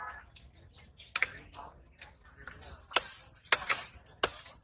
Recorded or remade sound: recorded